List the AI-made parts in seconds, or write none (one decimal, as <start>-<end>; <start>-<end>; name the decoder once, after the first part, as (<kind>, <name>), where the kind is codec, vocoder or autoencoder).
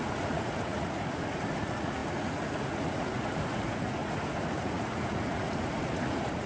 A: 0.0-6.5 (vocoder, Vocos)